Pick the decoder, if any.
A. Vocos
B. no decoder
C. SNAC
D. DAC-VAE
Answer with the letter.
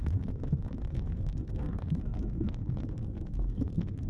C